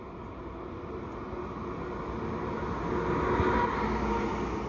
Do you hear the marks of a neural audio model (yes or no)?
no